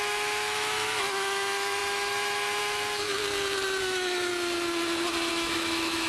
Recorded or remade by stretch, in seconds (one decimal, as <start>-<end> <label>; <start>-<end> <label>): 0.0-3.2 remade; 3.2-3.8 recorded; 3.8-4.3 remade; 4.3-5.3 recorded; 5.3-6.1 remade